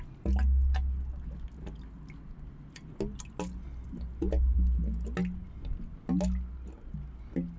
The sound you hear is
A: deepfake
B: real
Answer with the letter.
B